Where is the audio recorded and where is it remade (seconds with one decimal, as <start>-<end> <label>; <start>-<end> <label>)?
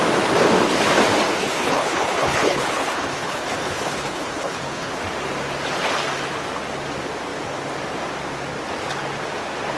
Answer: 0.0-1.4 recorded; 1.4-4.9 remade; 4.9-9.8 recorded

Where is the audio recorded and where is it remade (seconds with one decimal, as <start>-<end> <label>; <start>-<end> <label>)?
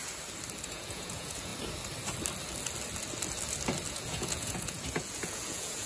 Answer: 0.0-0.7 recorded; 0.7-1.5 remade; 1.5-3.9 recorded; 3.9-5.9 remade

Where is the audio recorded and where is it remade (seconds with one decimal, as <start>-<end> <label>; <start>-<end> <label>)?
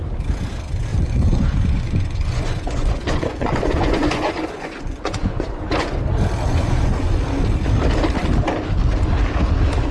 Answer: 0.0-0.9 recorded; 0.9-6.0 remade; 6.0-6.5 recorded; 6.5-7.2 remade; 7.2-9.9 recorded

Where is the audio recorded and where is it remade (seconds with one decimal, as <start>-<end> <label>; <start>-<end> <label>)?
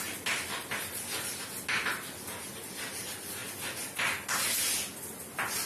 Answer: 0.0-5.7 recorded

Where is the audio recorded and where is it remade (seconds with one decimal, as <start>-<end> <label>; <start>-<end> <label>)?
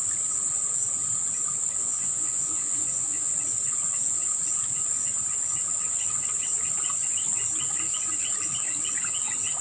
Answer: 0.0-1.8 recorded; 1.8-3.3 remade; 3.3-9.6 recorded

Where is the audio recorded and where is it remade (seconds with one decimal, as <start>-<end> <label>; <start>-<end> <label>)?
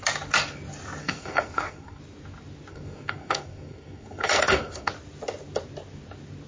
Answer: 0.0-1.0 recorded; 1.0-2.0 remade; 2.0-2.7 recorded; 2.7-4.9 remade; 4.9-6.5 recorded